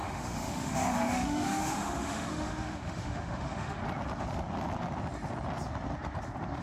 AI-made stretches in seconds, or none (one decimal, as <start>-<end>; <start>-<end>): 0.0-3.8